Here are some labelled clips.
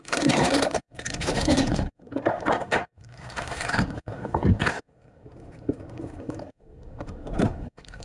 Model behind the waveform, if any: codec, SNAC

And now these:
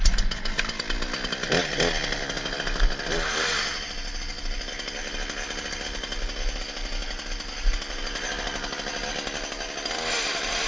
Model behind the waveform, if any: none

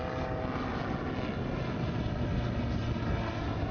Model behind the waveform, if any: none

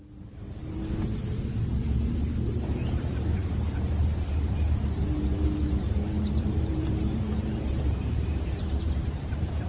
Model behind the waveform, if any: vocoder, BigVGAN v2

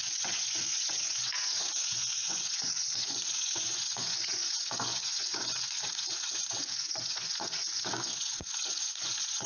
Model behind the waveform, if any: vocoder, Vocos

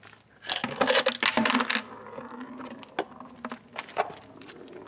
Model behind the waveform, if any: none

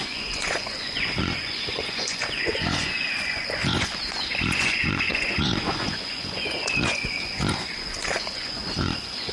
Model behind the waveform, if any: vocoder, Vocos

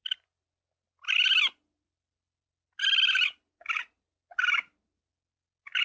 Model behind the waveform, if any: none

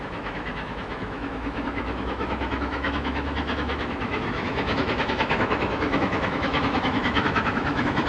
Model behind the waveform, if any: autoencoder, DAC-VAE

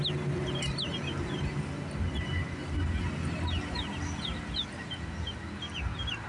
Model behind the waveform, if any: none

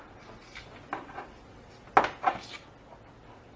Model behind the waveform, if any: none